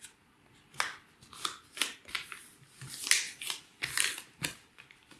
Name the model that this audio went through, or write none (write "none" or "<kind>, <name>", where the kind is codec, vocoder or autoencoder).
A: none